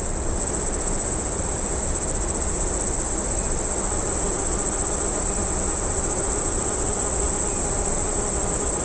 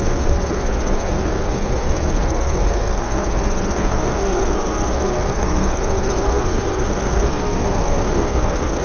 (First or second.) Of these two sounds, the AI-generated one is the second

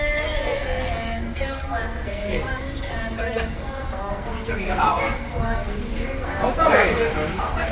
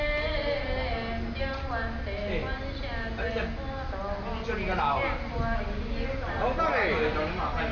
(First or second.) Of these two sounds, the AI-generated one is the first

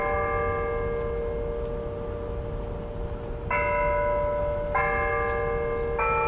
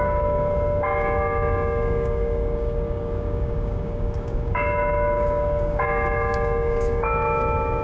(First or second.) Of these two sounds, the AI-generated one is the second